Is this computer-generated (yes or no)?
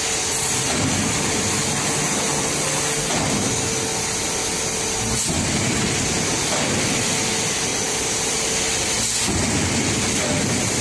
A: no